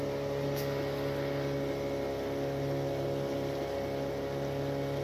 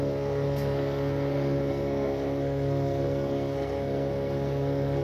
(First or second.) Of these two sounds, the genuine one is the first